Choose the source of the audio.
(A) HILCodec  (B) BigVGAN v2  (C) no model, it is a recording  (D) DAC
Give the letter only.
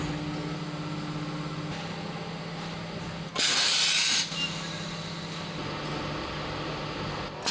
C